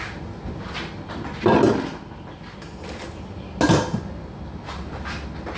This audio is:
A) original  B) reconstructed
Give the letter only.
A